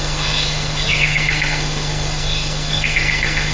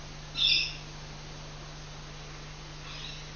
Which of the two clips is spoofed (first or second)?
first